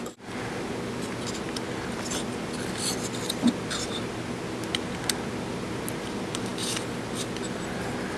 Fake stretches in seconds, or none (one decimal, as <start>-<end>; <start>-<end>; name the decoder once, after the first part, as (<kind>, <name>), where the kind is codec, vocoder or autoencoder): none